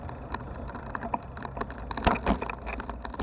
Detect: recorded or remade recorded